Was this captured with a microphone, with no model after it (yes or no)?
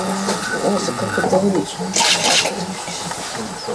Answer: yes